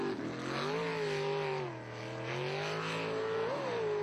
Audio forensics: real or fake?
real